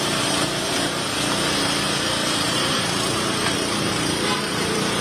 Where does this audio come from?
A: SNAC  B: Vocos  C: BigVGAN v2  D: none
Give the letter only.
C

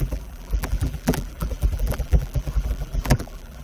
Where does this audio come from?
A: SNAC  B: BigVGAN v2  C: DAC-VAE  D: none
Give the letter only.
B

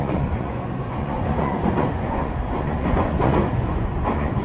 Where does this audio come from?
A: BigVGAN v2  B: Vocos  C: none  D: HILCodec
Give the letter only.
B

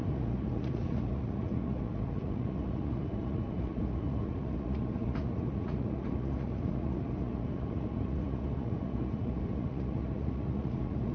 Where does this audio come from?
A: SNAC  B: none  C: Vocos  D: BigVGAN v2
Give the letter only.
C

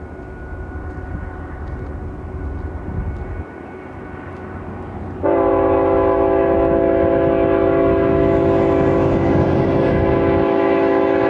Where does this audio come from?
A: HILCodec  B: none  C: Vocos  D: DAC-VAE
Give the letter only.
B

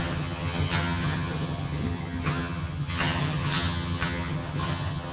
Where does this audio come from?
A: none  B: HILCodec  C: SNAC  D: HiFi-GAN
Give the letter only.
D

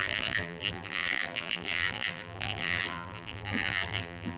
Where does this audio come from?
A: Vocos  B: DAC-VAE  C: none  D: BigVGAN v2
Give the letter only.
D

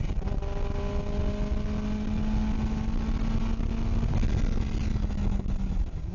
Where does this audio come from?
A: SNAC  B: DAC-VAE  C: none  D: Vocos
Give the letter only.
C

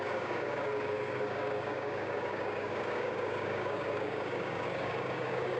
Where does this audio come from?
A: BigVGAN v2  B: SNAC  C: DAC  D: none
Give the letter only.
C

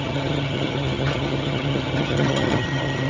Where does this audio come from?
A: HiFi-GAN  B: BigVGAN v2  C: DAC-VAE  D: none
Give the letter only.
A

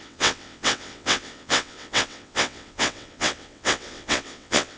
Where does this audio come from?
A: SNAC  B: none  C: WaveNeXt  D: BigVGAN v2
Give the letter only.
C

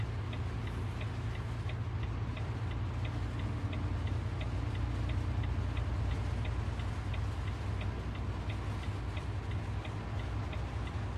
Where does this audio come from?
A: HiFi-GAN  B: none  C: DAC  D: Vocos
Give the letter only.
B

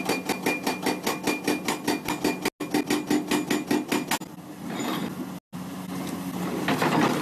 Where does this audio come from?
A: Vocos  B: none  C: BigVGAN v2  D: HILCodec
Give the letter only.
B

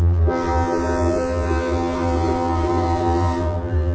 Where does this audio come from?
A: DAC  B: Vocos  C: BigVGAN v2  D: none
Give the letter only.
C